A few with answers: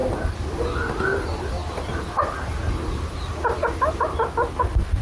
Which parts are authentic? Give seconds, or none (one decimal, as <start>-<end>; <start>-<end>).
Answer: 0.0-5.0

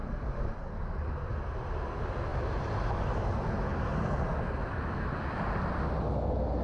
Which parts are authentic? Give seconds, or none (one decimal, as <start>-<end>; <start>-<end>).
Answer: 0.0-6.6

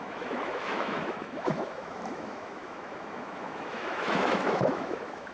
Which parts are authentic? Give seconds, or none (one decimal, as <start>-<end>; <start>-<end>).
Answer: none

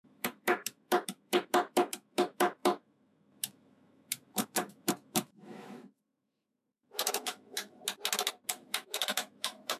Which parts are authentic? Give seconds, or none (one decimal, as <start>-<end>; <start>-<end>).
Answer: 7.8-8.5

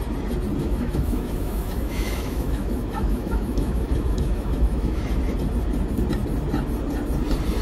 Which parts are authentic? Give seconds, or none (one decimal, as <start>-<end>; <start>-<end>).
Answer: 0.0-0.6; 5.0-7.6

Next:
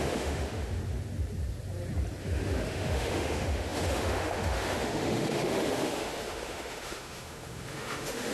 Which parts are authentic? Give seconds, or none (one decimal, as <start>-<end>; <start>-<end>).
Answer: 0.8-2.2

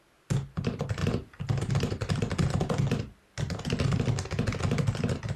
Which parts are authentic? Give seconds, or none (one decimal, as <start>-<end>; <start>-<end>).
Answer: 0.0-5.4

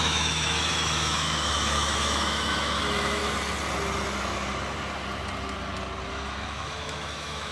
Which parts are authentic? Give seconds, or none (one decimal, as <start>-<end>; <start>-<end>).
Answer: 3.2-6.1